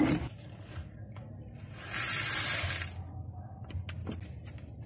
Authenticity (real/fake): real